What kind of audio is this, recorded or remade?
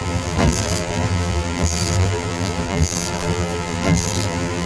remade